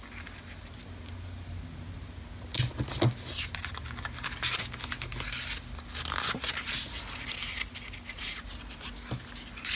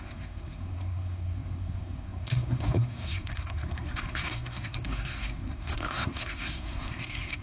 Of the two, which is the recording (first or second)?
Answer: first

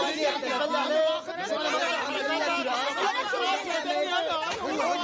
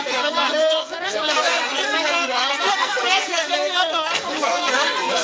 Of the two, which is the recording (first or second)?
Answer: first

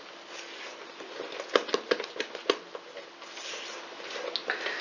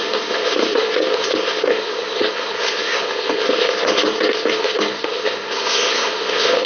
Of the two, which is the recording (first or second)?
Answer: first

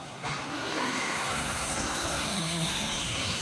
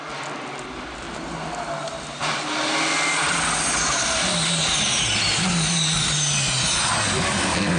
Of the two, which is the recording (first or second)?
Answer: second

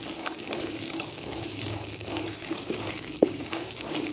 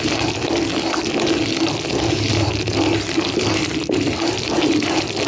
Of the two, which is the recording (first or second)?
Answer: second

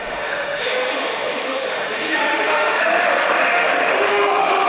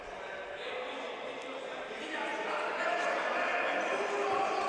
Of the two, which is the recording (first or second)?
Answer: second